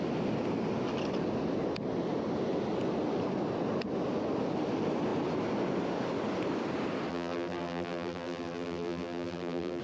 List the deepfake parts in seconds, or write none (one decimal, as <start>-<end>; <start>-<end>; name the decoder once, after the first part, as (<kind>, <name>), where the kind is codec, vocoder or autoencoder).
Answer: 7.1-9.8 (vocoder, BigVGAN v2)